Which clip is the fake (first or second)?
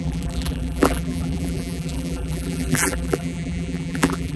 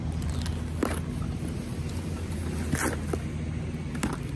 first